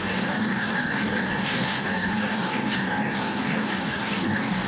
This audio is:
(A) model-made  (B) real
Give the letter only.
A